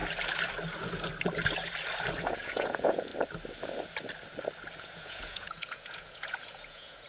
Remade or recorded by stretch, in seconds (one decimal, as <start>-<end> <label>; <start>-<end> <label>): 0.0-2.2 recorded; 2.2-3.1 remade; 3.1-4.8 recorded; 4.8-7.1 remade